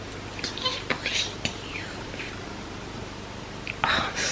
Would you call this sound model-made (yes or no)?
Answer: yes